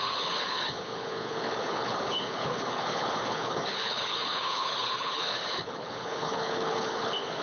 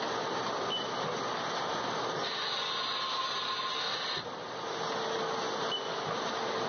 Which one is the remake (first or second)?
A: first